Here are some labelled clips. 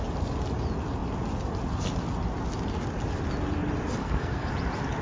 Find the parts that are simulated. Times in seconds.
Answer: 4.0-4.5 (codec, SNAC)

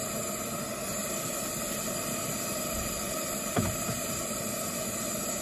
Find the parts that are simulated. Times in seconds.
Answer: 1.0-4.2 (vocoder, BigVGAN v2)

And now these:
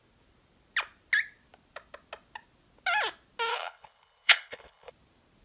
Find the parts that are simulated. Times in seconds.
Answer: 3.5-4.9 (codec, HILCodec)